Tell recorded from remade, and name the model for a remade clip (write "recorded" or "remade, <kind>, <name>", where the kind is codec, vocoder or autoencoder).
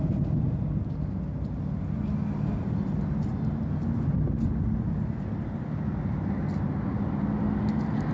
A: recorded